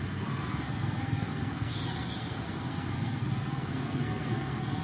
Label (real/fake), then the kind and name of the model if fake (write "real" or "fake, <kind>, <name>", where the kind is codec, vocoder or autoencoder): fake, codec, SNAC